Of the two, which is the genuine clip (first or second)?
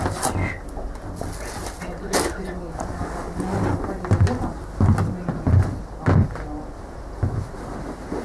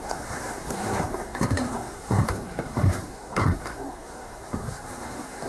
first